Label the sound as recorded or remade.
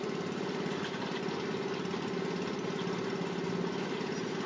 recorded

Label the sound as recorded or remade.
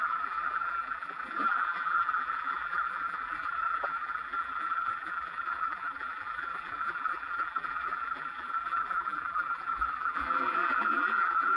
remade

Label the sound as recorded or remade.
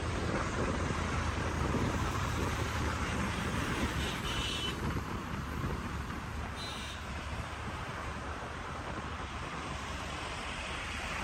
remade